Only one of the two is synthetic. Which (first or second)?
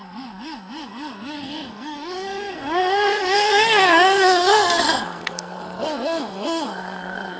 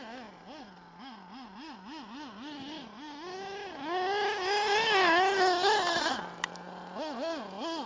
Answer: first